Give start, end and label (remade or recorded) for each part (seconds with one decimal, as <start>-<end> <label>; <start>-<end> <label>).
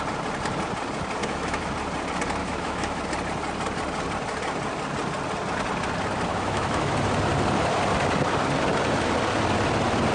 0.0-1.2 recorded; 1.2-1.7 remade; 1.7-2.4 recorded; 2.4-3.0 remade; 3.0-6.3 recorded; 6.3-6.9 remade; 6.9-10.1 recorded